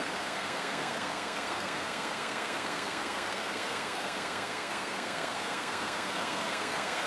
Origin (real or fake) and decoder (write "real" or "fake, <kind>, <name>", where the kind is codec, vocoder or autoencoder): fake, codec, SNAC